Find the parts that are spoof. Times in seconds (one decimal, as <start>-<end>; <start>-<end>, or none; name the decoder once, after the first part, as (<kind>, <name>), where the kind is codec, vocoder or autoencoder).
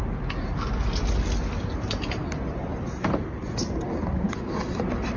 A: none